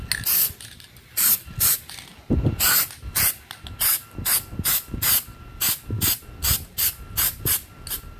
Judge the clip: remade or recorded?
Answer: recorded